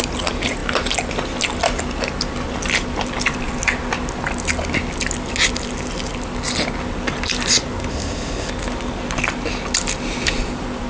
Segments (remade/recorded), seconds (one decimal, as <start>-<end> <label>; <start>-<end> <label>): 0.0-7.9 recorded; 7.9-8.5 remade; 8.5-10.9 recorded